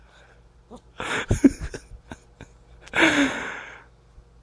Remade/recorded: recorded